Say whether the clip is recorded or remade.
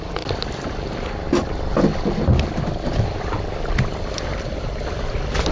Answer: recorded